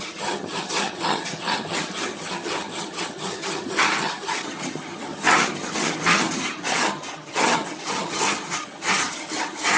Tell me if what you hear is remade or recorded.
remade